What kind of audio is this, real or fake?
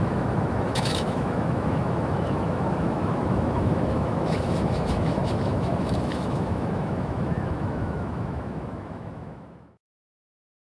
fake